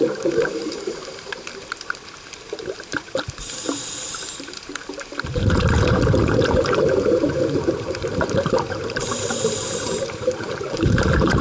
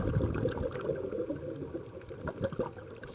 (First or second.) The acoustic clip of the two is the second